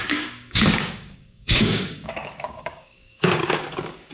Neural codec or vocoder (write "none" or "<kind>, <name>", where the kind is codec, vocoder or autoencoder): codec, DAC